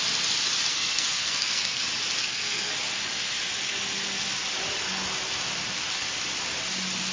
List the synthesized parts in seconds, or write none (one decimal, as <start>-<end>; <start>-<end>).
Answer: 0.7-1.8; 2.2-2.7